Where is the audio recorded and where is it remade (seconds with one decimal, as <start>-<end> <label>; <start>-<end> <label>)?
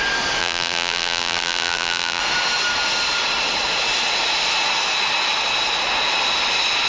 0.0-0.4 recorded; 0.4-2.2 remade; 2.2-6.9 recorded